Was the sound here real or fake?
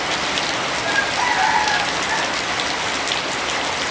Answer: real